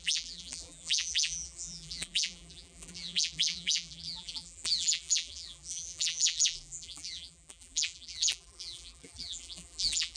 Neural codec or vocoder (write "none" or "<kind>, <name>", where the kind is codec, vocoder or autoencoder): vocoder, BigVGAN v2